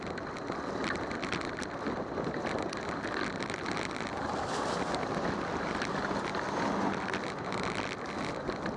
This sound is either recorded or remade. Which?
recorded